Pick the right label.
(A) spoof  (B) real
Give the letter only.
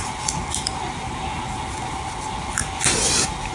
B